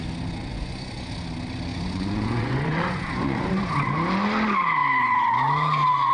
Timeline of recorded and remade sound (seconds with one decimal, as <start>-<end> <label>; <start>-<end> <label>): 0.0-0.5 recorded; 0.5-1.1 remade; 1.1-1.7 recorded; 1.7-3.7 remade; 3.7-6.1 recorded